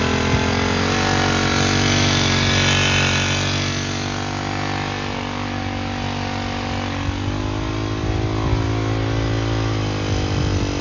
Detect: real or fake real